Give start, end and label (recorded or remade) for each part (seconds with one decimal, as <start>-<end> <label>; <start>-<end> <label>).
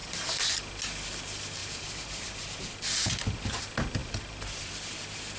0.0-0.7 remade; 0.7-1.6 recorded; 1.6-3.6 remade; 3.6-4.0 recorded; 4.0-4.7 remade; 4.7-5.4 recorded